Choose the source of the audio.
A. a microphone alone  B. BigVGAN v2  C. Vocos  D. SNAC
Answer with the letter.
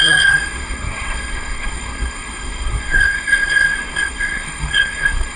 D